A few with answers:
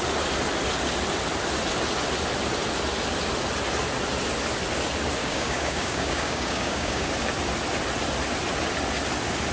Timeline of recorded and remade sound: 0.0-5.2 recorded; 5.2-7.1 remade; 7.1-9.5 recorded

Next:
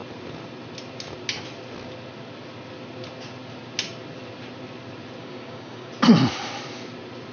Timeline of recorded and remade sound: 0.0-5.2 recorded; 5.2-5.9 remade; 5.9-7.3 recorded

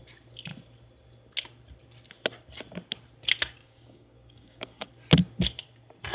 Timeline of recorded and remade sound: 0.0-3.6 recorded; 3.6-4.9 remade; 4.9-6.1 recorded

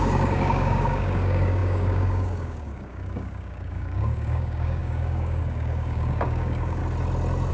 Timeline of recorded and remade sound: 0.0-6.8 remade; 6.8-7.5 recorded

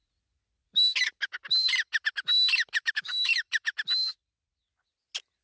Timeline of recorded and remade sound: 0.0-2.9 recorded; 2.9-3.3 remade; 3.3-5.4 recorded

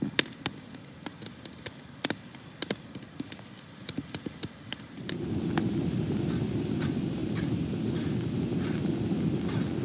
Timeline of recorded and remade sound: 0.0-9.8 recorded

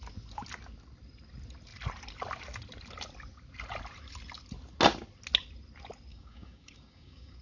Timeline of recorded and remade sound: 0.0-6.1 recorded; 6.1-7.4 remade